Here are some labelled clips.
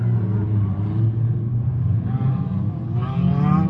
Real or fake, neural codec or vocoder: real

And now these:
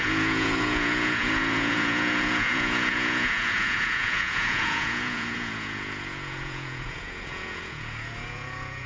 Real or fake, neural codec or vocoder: fake, vocoder, Vocos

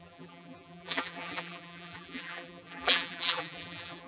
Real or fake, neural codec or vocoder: fake, vocoder, BigVGAN v2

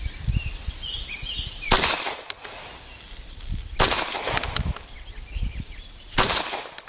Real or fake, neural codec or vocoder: real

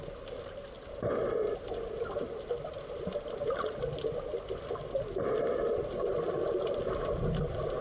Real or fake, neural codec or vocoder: real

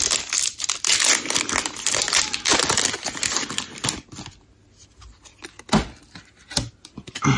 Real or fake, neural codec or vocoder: real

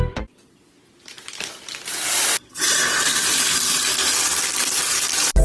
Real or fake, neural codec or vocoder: fake, vocoder, BigVGAN v2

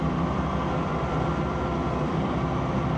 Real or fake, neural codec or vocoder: fake, vocoder, BigVGAN v2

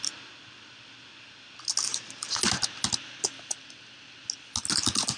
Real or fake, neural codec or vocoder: real